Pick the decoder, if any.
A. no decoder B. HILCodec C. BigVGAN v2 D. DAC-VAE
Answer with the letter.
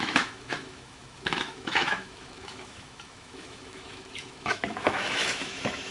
D